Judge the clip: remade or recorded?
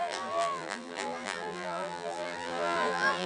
remade